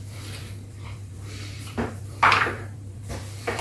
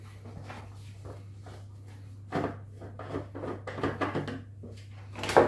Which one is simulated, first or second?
first